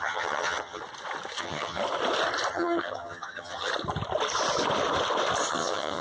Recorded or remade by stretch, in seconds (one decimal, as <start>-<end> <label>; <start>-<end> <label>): 0.0-0.8 remade; 0.8-1.4 recorded; 1.4-1.8 remade; 1.8-2.5 recorded; 2.5-3.7 remade; 3.7-5.5 recorded; 5.5-6.0 remade